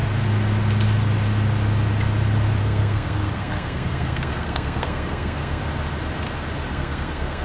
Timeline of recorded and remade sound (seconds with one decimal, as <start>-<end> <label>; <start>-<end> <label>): 0.0-2.6 recorded; 2.6-5.6 remade; 5.6-6.7 recorded; 6.7-7.4 remade